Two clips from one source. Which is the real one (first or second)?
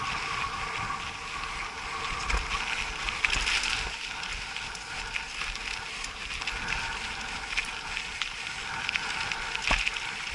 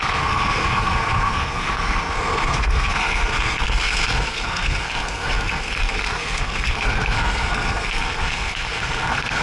first